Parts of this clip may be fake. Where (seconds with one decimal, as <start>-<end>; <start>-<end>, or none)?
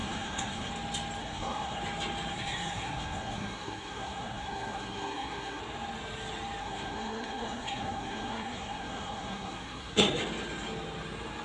0.0-0.7; 1.2-1.8; 2.3-5.6; 6.6-10.2